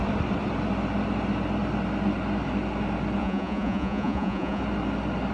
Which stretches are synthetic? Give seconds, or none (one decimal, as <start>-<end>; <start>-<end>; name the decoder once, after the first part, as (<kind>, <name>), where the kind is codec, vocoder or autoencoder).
3.2-4.6 (vocoder, Vocos)